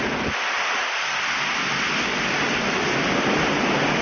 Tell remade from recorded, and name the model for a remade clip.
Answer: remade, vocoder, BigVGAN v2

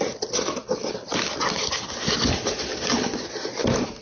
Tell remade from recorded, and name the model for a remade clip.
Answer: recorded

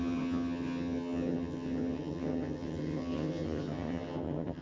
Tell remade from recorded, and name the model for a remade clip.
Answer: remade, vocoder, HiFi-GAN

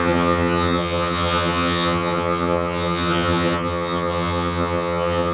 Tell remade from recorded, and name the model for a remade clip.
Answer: remade, vocoder, HiFi-GAN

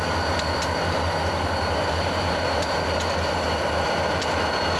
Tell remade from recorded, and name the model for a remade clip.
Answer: recorded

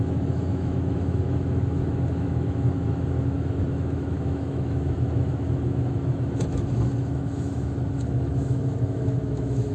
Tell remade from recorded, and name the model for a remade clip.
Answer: remade, autoencoder, DAC-VAE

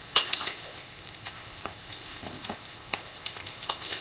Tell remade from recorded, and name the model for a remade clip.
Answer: remade, codec, ZipCodec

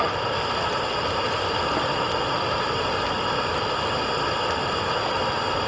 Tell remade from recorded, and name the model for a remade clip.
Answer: recorded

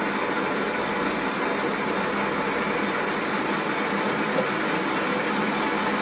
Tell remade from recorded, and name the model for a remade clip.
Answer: recorded